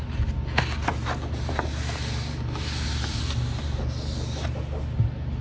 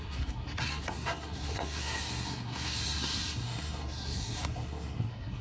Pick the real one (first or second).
first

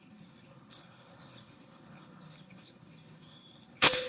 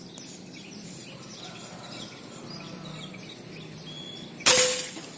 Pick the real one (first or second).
second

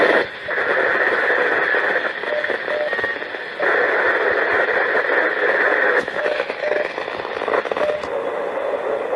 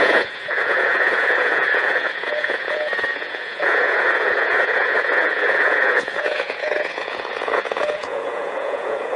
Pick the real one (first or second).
first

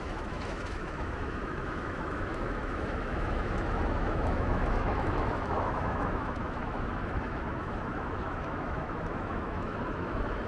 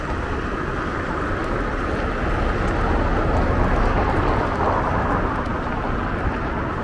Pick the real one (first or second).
second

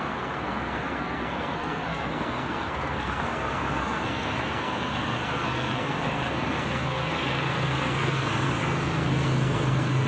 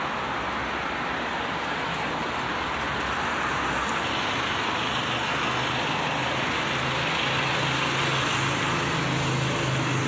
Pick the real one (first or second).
second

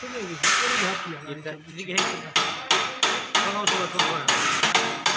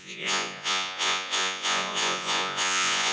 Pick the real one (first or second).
first